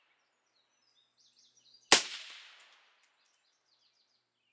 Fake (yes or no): no